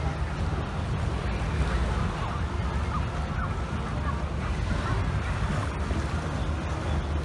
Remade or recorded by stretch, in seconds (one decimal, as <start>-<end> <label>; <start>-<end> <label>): 0.0-7.2 recorded